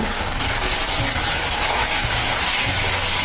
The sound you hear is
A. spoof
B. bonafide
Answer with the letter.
A